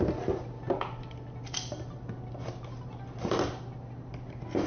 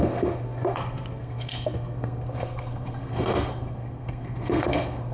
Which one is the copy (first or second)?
second